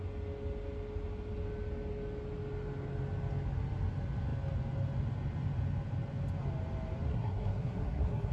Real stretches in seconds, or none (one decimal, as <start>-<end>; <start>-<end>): 0.0-7.1